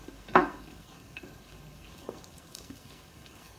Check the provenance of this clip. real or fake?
fake